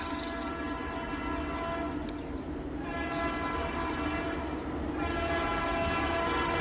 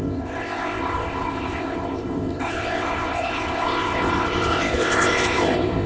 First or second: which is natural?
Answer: first